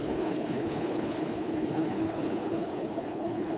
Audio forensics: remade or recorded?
remade